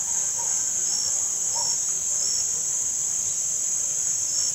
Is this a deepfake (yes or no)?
no